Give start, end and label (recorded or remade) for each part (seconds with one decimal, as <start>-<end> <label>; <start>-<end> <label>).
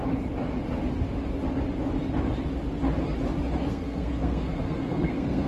0.0-3.6 recorded; 3.6-5.5 remade